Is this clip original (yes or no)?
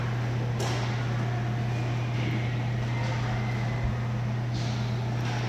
yes